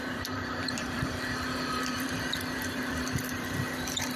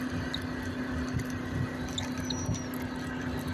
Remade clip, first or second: first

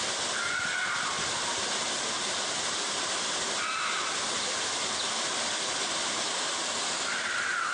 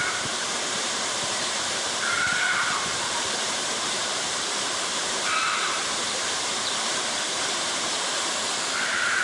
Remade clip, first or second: second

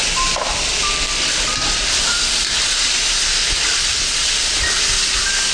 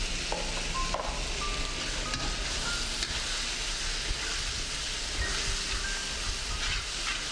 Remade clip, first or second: first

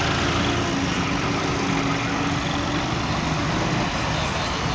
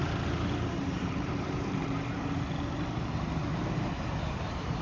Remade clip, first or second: second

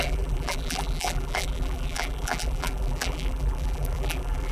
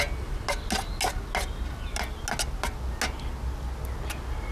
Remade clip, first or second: first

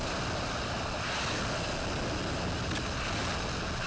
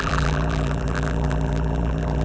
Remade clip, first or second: second